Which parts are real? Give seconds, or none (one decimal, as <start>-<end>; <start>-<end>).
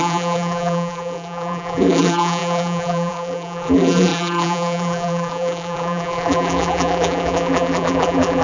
none